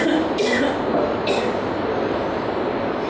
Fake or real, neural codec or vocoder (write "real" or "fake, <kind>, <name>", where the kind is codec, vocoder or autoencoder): real